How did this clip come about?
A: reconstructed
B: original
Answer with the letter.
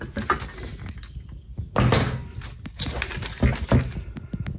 B